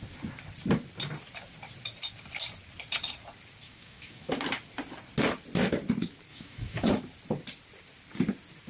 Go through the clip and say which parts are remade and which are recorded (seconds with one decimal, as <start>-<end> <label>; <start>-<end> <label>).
0.0-3.6 recorded; 3.6-4.3 remade; 4.3-6.3 recorded; 6.3-6.9 remade; 6.9-8.7 recorded

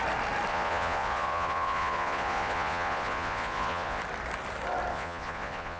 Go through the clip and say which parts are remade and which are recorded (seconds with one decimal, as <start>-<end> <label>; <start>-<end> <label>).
0.0-0.5 recorded; 0.5-4.0 remade; 4.0-4.9 recorded; 4.9-5.8 remade

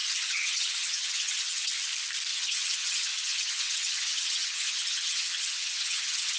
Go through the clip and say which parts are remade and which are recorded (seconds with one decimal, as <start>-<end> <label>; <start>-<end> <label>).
0.0-1.7 remade; 1.7-2.3 recorded; 2.3-6.4 remade